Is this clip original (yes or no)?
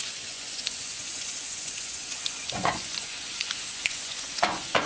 no